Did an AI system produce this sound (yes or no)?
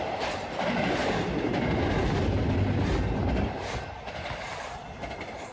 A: no